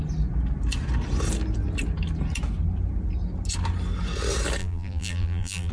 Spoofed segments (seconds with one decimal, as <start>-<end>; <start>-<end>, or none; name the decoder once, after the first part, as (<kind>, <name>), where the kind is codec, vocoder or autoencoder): 4.6-5.7 (vocoder, BigVGAN v2)

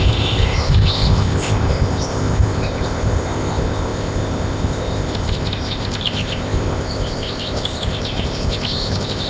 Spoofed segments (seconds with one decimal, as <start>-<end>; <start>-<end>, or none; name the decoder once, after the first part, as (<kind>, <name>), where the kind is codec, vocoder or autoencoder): 0.0-9.3 (codec, ZipCodec)

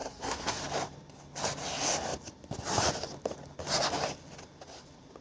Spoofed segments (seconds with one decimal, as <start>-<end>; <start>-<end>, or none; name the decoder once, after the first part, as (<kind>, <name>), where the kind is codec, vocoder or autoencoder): 0.0-0.6 (codec, SNAC)